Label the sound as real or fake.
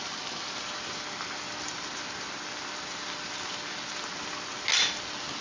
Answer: real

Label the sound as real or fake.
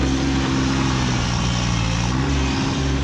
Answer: real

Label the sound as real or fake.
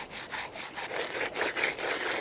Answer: real